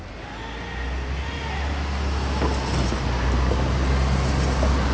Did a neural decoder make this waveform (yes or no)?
no